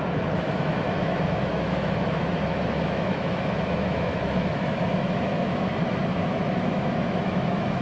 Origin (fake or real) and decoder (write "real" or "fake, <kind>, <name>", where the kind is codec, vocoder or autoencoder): fake, autoencoder, DAC-VAE